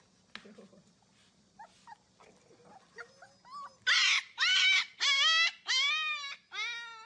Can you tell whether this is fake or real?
real